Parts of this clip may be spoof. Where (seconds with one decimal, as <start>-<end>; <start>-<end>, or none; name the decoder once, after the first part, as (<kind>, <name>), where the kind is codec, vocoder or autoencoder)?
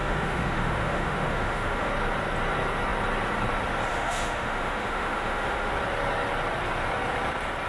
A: 0.0-1.9 (autoencoder, DAC-VAE); 3.9-5.7